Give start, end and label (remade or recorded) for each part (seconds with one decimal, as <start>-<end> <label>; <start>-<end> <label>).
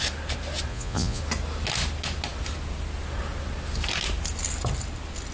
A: 0.0-0.7 recorded; 0.7-1.2 remade; 1.2-5.3 recorded